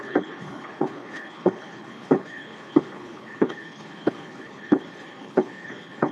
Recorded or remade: remade